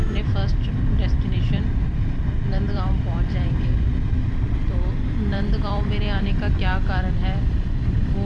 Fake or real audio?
fake